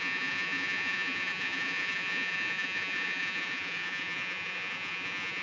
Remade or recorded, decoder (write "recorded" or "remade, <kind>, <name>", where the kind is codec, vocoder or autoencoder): remade, vocoder, Vocos